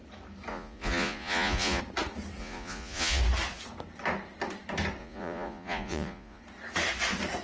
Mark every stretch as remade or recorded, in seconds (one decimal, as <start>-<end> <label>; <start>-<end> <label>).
0.0-0.5 recorded; 0.5-1.8 remade; 1.8-2.4 recorded; 2.4-3.2 remade; 3.2-5.0 recorded; 5.0-6.4 remade; 6.4-7.4 recorded